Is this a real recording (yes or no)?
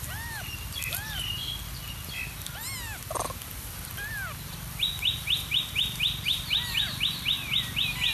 yes